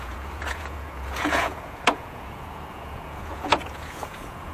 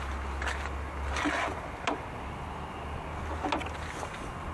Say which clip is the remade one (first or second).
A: first